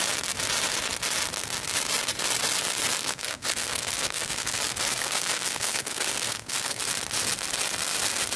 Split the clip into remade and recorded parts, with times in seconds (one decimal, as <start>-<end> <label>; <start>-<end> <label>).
0.0-3.0 recorded; 3.0-4.6 remade; 4.6-5.0 recorded; 5.0-6.8 remade; 6.8-8.4 recorded